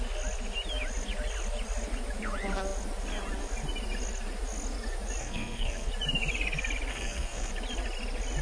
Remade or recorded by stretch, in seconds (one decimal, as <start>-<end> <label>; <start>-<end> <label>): 0.0-5.2 recorded; 5.2-5.9 remade; 5.9-6.9 recorded; 6.9-7.5 remade; 7.5-8.4 recorded